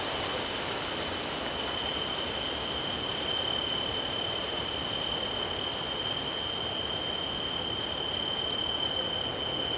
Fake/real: real